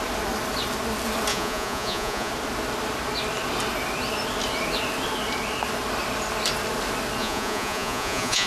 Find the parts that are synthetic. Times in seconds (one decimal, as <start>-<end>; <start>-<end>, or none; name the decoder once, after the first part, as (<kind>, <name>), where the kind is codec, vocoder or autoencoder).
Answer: 1.3-2.3 (vocoder, Vocos); 7.2-8.5